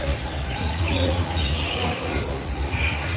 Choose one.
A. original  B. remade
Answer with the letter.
B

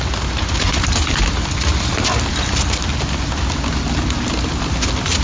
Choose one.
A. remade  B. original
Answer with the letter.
B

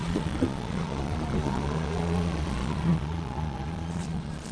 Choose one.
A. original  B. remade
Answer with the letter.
B